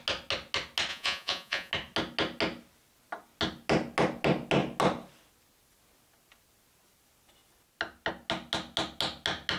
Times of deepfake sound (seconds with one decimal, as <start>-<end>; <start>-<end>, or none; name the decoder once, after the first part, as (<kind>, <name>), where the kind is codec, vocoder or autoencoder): 0.9-1.7 (vocoder, Vocos)